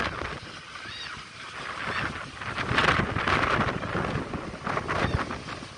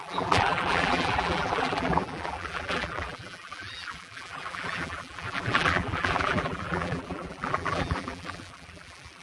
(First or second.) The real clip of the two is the first